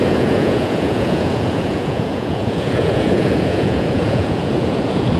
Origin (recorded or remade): remade